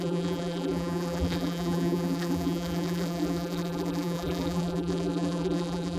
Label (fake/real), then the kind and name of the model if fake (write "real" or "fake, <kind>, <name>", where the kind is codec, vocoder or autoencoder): fake, vocoder, BigVGAN v2